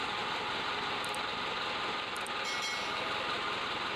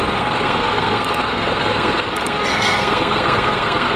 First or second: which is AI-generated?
second